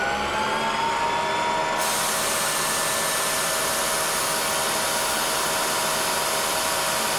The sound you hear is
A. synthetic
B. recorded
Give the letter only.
B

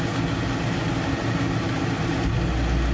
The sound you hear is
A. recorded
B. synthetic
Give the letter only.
A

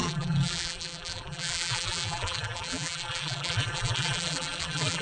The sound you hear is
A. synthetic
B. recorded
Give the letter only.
A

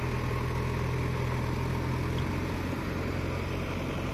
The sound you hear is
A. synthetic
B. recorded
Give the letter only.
B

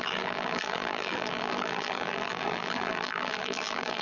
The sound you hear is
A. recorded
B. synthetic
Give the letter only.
B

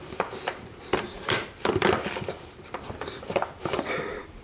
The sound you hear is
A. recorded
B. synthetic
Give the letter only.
B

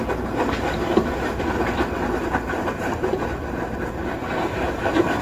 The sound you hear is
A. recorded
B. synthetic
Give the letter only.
B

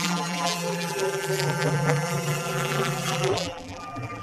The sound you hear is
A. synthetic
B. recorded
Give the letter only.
A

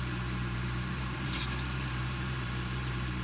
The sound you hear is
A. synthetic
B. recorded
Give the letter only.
A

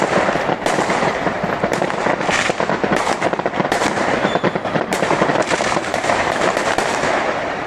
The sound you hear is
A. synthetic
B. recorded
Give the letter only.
A